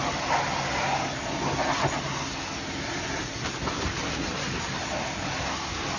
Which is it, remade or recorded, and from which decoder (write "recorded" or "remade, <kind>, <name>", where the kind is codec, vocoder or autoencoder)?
recorded